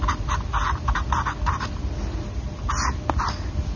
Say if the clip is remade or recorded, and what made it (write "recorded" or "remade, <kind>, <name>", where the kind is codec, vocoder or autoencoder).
recorded